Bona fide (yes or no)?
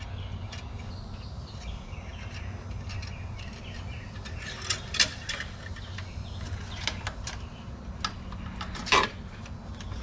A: yes